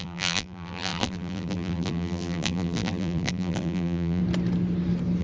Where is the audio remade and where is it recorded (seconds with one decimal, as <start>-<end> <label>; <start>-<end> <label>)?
0.0-4.2 remade; 4.2-5.2 recorded